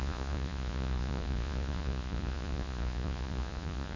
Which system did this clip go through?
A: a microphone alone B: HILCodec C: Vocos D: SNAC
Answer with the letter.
C